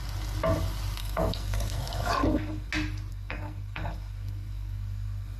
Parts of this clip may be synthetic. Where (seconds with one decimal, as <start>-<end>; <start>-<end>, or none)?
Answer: 1.0-2.7; 3.1-5.4